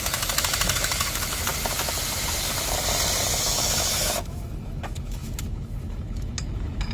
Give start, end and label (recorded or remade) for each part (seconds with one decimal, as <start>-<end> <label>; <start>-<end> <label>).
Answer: 0.0-1.5 remade; 1.5-3.4 recorded; 3.4-6.9 remade